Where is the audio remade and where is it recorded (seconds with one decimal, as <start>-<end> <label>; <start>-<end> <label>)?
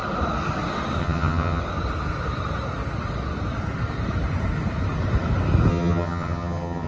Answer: 0.0-1.0 recorded; 1.0-1.6 remade; 1.6-5.7 recorded; 5.7-6.9 remade